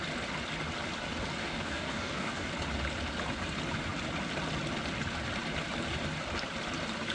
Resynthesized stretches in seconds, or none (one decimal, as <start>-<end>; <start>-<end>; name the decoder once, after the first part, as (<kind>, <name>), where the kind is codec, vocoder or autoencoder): 1.4-2.5 (codec, DAC)